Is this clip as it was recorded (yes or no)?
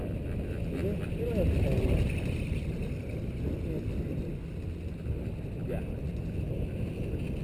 yes